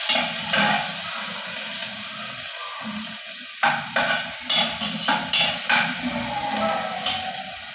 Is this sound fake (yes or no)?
no